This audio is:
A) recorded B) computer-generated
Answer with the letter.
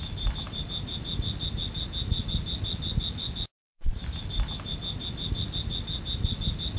A